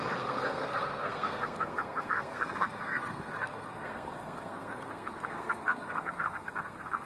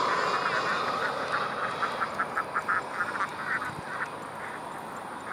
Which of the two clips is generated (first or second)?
first